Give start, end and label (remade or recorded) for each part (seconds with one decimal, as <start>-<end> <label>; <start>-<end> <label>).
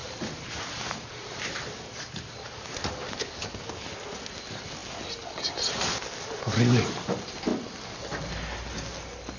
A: 0.0-2.9 remade; 2.9-9.4 recorded